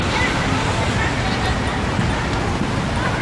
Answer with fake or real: real